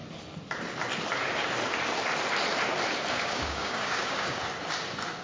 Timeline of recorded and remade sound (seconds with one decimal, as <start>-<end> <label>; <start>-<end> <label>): 0.0-3.1 recorded; 3.1-4.4 remade; 4.4-5.2 recorded